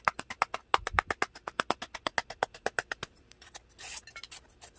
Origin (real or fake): real